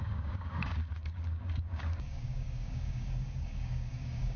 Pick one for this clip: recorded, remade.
remade